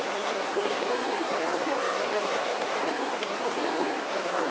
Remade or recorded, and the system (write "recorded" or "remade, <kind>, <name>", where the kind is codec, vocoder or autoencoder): remade, codec, SNAC